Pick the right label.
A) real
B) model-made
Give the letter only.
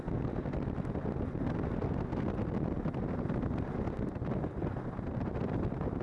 A